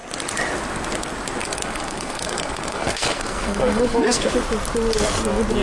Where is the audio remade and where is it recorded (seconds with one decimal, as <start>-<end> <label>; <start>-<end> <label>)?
0.0-1.4 recorded; 1.4-4.3 remade; 4.3-5.6 recorded